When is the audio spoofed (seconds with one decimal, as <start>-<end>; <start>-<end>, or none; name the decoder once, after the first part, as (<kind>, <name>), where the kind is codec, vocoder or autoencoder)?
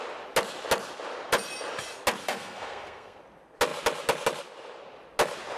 2.2-3.2 (codec, SNAC)